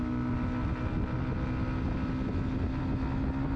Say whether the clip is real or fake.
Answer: real